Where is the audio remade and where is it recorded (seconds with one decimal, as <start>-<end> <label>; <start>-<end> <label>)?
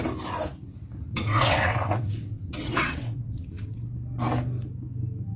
0.0-1.0 recorded; 1.0-3.8 remade; 3.8-5.4 recorded